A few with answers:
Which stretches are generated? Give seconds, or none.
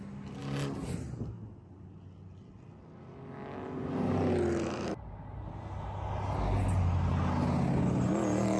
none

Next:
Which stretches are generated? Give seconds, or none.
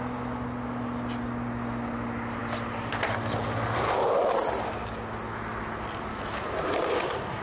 none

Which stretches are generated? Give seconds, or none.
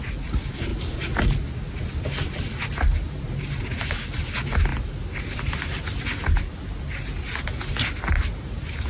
none